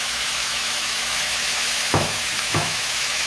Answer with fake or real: fake